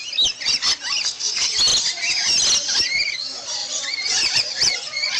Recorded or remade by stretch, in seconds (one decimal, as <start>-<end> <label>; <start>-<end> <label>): 0.0-3.6 recorded; 3.6-5.2 remade